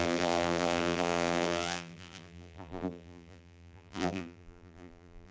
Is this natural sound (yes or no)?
no